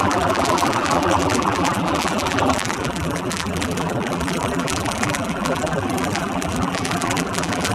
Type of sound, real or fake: fake